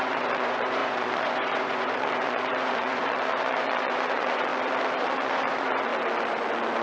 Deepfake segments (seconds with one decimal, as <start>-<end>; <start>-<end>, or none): 0.0-4.5; 5.0-5.9